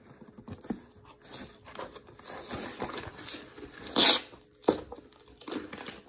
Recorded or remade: recorded